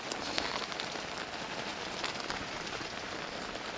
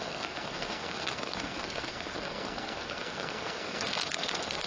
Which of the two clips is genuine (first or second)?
first